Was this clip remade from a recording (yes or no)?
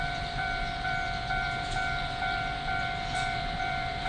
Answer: yes